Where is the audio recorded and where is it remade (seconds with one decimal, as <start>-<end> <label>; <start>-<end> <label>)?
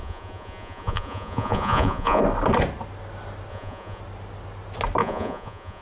0.0-2.2 remade; 2.2-3.5 recorded; 3.5-4.0 remade; 4.0-5.0 recorded; 5.0-5.8 remade